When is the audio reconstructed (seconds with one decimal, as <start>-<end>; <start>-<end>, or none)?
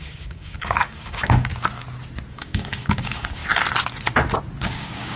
0.0-1.5; 2.3-3.4; 4.6-5.2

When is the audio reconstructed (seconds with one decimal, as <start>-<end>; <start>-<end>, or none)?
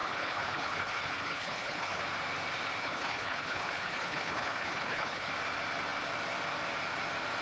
0.0-2.0; 2.8-5.3